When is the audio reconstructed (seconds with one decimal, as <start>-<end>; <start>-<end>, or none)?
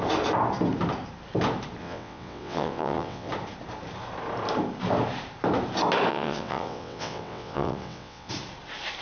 1.8-3.3; 6.1-8.3